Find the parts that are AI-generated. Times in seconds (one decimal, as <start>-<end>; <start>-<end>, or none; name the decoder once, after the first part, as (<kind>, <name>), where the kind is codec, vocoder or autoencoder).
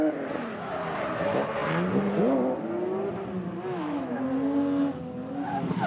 3.7-4.2 (autoencoder, DAC-VAE)